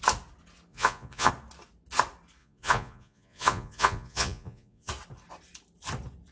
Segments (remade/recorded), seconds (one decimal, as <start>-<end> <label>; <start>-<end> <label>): 0.0-0.7 recorded; 0.7-1.3 remade; 1.3-2.4 recorded; 2.4-4.9 remade; 4.9-6.3 recorded